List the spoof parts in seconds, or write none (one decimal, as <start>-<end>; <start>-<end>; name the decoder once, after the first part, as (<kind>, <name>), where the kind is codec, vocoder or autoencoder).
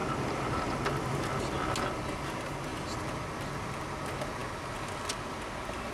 0.0-1.3 (vocoder, BigVGAN v2)